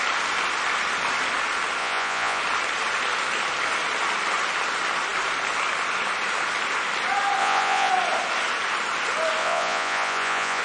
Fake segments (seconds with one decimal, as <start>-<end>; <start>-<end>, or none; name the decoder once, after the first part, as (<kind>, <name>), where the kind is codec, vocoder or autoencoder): 1.8-2.4 (vocoder, Vocos); 7.4-7.9; 9.4-10.6